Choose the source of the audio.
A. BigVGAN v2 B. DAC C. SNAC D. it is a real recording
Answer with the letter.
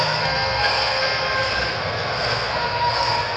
C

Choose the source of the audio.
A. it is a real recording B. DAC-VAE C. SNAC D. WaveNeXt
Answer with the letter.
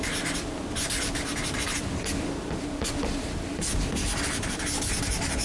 A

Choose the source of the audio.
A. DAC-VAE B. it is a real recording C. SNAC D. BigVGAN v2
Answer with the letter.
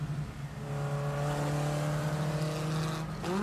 B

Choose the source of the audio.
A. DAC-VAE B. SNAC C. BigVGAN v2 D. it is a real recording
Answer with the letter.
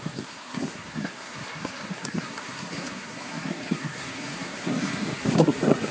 B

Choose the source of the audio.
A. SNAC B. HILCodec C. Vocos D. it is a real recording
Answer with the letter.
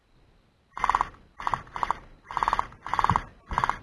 D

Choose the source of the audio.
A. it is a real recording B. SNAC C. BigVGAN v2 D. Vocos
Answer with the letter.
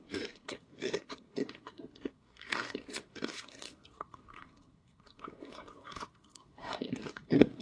B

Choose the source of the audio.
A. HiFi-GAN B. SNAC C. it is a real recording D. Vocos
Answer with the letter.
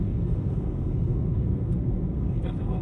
B